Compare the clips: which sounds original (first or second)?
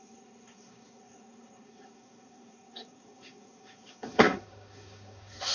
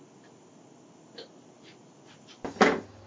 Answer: second